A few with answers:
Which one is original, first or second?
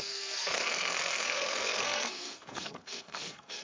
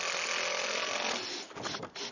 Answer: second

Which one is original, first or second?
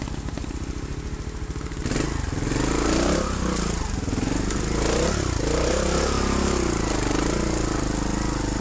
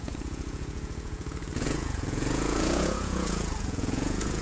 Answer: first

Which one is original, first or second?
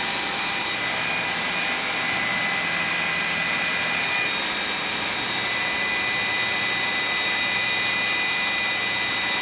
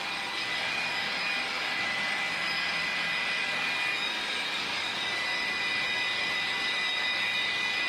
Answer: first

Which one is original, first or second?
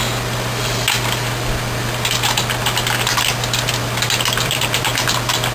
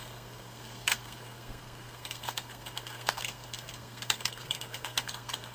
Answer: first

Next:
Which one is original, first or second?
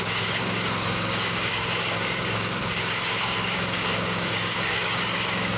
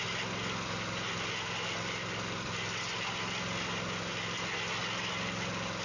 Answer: second